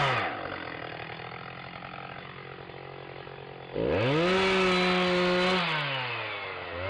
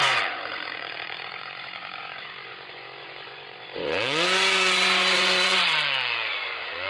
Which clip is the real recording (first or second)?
first